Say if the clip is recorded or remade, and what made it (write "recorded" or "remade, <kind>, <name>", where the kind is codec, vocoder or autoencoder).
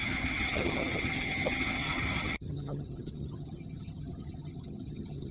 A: remade, vocoder, HiFi-GAN